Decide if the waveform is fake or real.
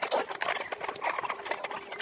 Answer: real